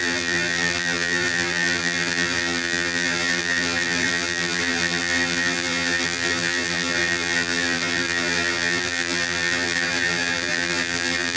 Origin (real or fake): fake